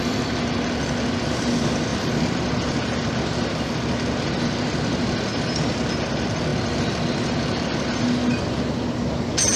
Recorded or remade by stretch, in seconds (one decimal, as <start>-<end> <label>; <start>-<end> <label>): 0.0-9.6 recorded